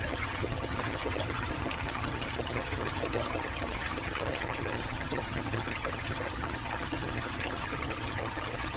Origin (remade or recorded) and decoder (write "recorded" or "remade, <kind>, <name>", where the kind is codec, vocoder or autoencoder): remade, vocoder, HiFi-GAN